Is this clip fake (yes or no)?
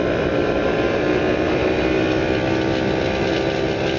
no